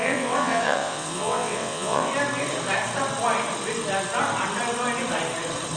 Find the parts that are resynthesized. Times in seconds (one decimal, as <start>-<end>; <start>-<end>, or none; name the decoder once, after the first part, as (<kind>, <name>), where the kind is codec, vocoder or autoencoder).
0.0-2.1 (vocoder, WaveNeXt)